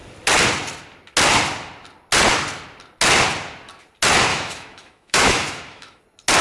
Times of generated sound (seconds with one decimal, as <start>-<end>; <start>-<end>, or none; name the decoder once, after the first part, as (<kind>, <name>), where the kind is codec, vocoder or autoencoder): 4.3-6.0 (autoencoder, DAC-VAE)